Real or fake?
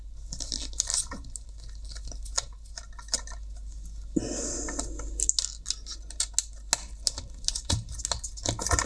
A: real